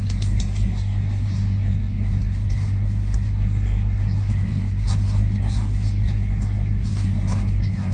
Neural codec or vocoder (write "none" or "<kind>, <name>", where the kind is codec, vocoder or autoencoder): codec, SNAC